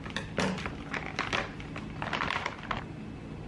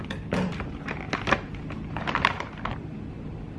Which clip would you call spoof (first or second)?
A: second